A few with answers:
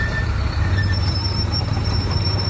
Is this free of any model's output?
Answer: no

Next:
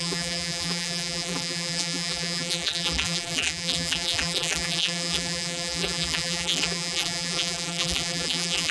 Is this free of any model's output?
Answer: no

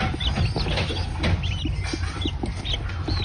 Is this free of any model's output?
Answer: yes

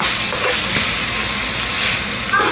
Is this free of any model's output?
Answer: yes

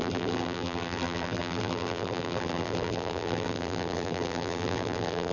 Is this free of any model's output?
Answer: no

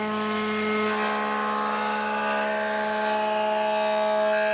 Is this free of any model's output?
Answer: yes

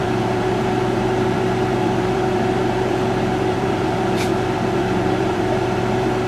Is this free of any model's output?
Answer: no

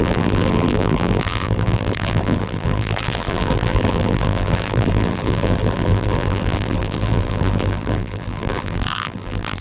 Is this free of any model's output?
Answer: no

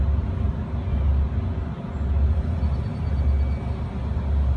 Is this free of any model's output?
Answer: yes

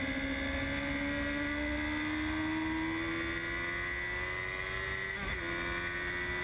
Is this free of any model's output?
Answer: yes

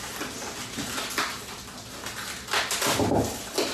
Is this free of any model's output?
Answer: yes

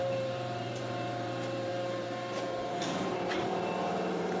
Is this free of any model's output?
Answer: no